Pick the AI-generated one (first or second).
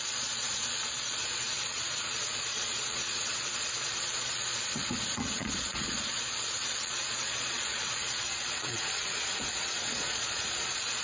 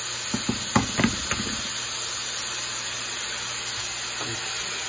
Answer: first